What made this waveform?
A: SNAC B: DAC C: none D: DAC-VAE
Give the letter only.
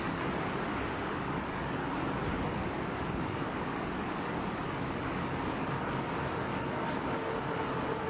B